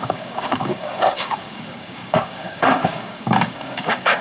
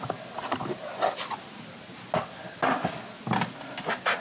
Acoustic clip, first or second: second